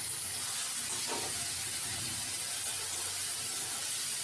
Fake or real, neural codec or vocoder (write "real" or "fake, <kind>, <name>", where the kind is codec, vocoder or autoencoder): real